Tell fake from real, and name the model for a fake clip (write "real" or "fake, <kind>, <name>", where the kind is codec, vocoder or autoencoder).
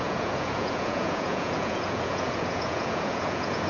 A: fake, vocoder, Vocos